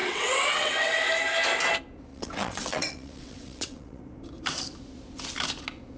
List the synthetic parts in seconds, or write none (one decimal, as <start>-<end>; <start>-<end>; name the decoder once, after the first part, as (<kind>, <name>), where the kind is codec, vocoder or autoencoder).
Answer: 0.0-1.0 (vocoder, WaveNeXt); 2.1-4.0